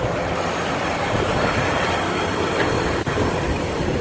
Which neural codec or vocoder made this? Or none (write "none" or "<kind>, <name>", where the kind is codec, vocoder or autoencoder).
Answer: vocoder, BigVGAN v2